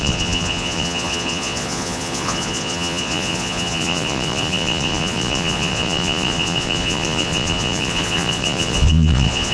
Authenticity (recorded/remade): remade